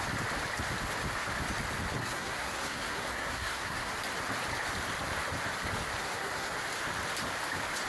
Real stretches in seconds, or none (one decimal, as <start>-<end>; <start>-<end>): 0.0-2.0; 3.9-6.0; 6.5-7.9